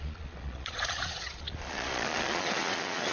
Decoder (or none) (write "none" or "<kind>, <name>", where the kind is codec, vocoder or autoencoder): vocoder, Vocos